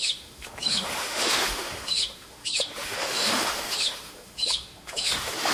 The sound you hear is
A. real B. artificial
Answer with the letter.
B